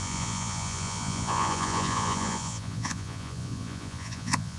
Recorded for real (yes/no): no